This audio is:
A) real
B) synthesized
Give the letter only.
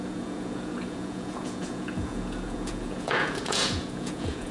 B